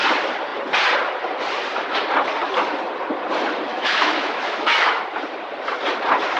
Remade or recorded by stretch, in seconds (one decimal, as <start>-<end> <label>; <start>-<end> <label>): 0.0-3.7 recorded; 3.7-5.0 remade; 5.0-6.4 recorded